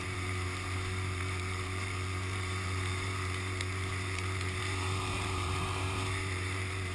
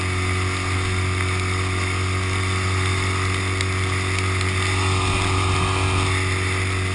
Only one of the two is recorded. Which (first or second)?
second